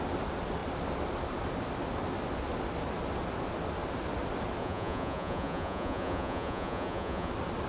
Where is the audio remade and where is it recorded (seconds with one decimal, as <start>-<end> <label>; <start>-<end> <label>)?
0.0-4.6 recorded; 4.6-7.3 remade; 7.3-7.7 recorded